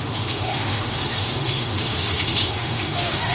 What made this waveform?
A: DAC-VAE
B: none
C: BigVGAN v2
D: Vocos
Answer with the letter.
A